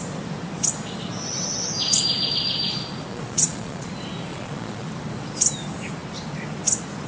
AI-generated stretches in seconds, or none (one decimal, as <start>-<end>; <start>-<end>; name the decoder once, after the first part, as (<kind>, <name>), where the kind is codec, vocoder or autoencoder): 3.1-3.9 (vocoder, Vocos); 4.3-4.9

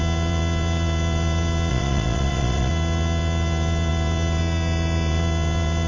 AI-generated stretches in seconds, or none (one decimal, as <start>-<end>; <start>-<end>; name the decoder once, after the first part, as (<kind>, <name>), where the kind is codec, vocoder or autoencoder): 1.7-2.7 (vocoder, Vocos)

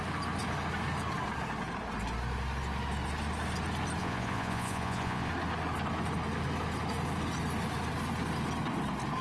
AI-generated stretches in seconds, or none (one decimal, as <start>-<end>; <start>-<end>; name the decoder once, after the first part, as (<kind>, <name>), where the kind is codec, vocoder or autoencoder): 4.0-5.3 (vocoder, Vocos)

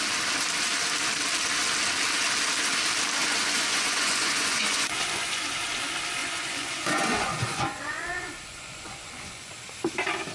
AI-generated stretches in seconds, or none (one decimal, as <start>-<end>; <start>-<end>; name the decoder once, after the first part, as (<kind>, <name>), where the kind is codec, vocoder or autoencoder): 3.2-5.4 (vocoder, Vocos); 6.2-9.5

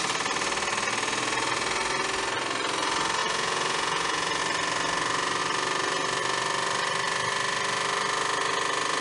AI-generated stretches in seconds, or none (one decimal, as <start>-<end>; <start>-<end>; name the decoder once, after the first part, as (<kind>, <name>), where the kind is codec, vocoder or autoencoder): 3.2-4.4 (vocoder, Vocos)

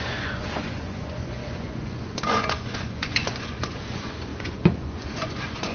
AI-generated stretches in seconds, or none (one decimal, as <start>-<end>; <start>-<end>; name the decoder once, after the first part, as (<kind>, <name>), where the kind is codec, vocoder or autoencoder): 0.0-5.7 (vocoder, Vocos)